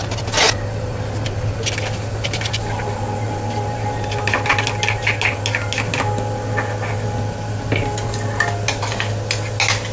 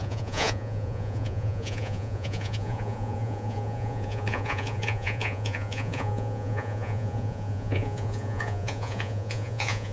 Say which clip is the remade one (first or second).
second